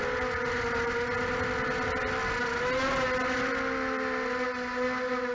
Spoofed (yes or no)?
no